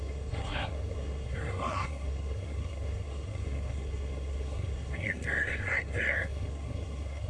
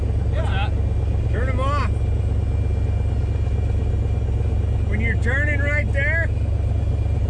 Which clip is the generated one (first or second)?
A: first